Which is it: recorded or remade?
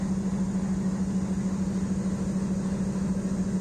recorded